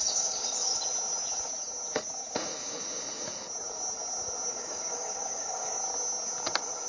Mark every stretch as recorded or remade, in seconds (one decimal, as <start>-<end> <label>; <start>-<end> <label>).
0.0-0.7 remade; 0.7-4.5 recorded; 4.5-5.8 remade; 5.8-6.9 recorded